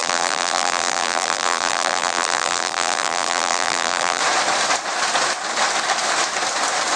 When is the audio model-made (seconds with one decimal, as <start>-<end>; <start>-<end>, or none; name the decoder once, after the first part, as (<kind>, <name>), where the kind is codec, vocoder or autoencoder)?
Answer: 0.0-4.2 (vocoder, BigVGAN v2)